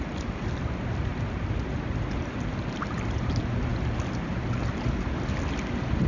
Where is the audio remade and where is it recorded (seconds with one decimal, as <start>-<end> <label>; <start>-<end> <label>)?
0.0-6.1 recorded

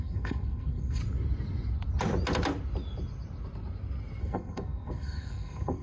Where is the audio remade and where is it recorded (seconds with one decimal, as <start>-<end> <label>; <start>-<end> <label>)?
0.0-1.0 remade; 1.0-4.2 recorded; 4.2-5.8 remade